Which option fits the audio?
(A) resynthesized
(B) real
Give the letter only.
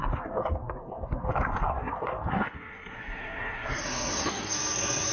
A